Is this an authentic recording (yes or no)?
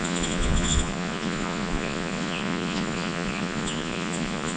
no